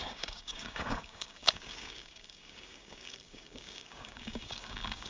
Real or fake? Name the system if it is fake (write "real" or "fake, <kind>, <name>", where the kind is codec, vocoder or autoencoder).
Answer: fake, codec, DAC